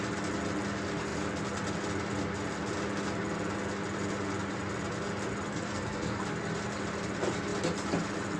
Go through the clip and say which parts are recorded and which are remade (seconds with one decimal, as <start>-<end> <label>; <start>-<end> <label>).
0.0-5.5 recorded; 5.5-6.2 remade; 6.2-8.4 recorded